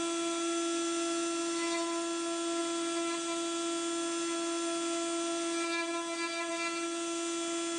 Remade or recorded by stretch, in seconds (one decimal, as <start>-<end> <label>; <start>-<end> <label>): 0.0-7.8 recorded